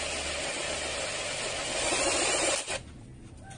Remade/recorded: recorded